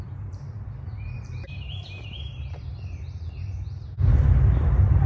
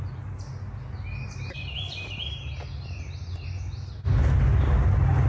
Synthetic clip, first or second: first